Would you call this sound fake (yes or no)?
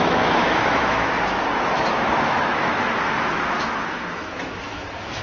yes